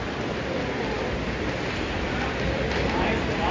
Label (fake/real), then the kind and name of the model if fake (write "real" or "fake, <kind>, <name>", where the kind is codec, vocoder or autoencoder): real